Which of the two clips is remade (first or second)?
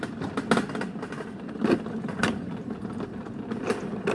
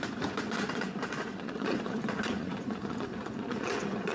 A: second